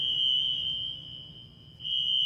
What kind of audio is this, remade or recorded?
recorded